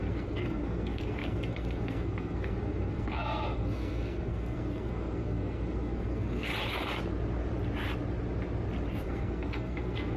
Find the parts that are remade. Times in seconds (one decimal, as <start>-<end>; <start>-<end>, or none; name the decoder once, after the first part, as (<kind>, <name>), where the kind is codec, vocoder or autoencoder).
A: 0.0-6.5 (codec, SNAC); 8.9-10.2